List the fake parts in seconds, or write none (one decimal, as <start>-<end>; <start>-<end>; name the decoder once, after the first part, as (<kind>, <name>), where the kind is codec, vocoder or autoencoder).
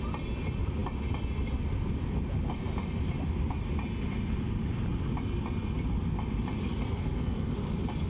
7.0-7.5 (codec, SNAC)